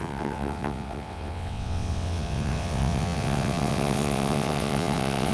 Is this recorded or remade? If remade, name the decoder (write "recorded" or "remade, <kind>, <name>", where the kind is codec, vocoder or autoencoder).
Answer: remade, vocoder, WaveNeXt